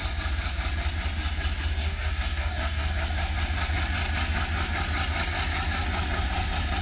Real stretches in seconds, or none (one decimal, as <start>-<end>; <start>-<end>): 0.0-1.8; 2.9-6.8